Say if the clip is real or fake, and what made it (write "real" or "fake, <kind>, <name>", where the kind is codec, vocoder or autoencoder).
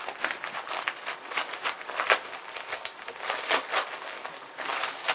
real